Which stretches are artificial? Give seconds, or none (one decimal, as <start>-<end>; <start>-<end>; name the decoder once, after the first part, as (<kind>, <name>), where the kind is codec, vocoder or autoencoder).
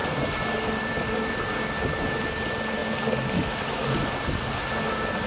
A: none